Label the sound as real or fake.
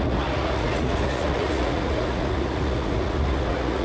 fake